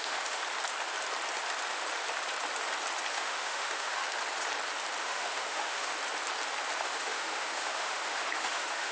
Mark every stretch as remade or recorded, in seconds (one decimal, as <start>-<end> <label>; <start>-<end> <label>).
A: 0.0-0.4 remade; 0.4-3.1 recorded; 3.1-4.0 remade; 4.0-5.0 recorded; 5.0-5.9 remade; 5.9-6.8 recorded; 6.8-8.9 remade